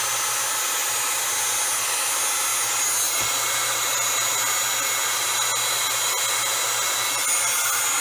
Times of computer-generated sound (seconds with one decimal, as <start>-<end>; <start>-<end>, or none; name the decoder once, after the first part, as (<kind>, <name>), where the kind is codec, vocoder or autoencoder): none